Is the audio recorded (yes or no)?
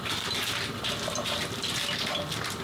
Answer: no